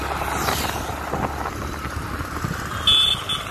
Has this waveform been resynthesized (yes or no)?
no